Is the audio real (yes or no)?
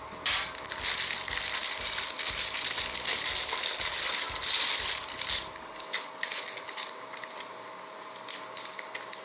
yes